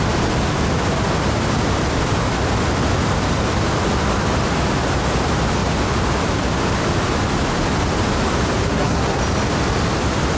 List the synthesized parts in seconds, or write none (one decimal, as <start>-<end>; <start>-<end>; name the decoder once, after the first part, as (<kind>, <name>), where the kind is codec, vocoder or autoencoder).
8.6-9.2 (codec, SNAC)